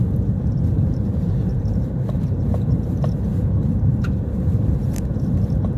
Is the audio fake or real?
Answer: fake